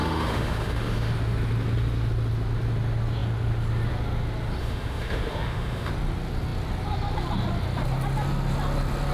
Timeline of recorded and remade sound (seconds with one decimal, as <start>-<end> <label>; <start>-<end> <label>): 0.0-1.1 remade; 1.1-4.6 recorded; 4.6-5.9 remade; 5.9-9.1 recorded